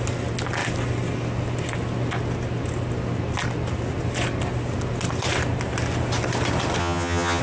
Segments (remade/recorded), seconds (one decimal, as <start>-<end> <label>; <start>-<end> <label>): 0.0-6.8 recorded; 6.8-7.4 remade